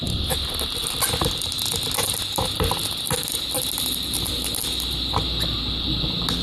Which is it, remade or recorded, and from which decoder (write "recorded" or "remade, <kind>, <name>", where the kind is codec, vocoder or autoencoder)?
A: recorded